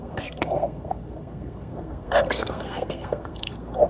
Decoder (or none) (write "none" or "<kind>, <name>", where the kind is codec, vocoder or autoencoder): codec, SNAC